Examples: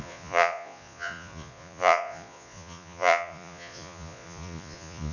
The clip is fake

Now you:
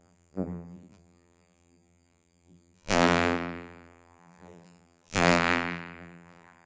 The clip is fake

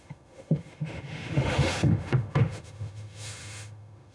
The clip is fake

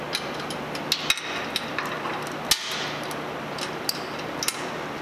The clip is real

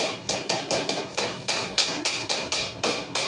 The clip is fake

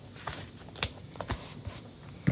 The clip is real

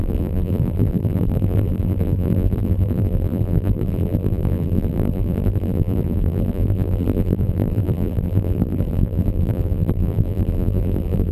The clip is fake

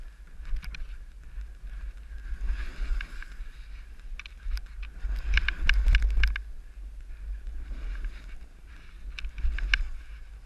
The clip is real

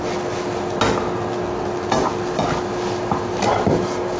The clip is real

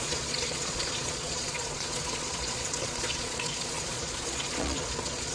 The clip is fake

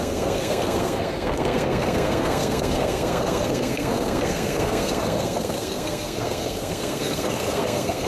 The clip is fake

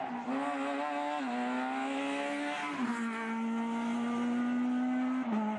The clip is real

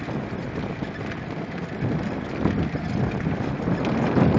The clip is real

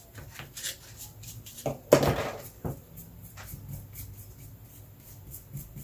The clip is real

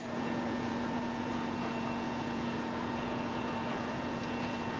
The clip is fake